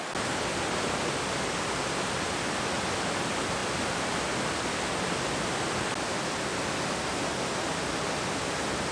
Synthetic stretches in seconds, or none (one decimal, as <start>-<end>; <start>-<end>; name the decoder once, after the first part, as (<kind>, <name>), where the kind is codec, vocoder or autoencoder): none